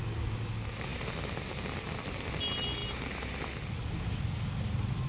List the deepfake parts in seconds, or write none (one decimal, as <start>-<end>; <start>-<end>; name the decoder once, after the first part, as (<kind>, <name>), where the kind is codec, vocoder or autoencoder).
none